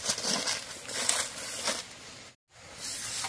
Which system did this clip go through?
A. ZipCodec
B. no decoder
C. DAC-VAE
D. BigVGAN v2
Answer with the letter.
B